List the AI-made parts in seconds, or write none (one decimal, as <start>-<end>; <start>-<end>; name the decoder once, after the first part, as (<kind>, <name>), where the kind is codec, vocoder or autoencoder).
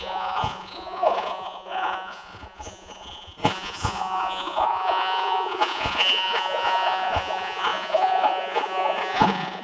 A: 0.0-9.6 (vocoder, Vocos)